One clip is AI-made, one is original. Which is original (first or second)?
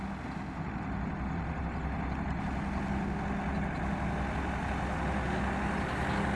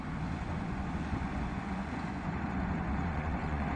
first